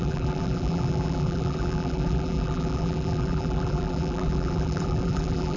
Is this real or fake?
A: fake